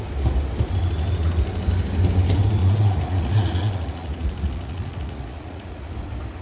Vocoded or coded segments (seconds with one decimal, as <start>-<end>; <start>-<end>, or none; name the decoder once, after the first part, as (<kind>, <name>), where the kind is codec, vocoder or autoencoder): 2.6-5.9 (vocoder, Vocos)